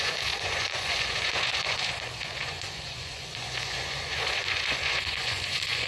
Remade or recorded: remade